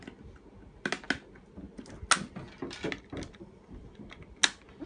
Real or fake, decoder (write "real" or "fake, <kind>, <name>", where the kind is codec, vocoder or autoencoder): real